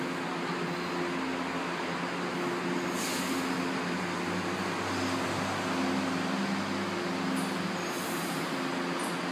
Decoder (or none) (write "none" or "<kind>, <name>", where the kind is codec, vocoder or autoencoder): none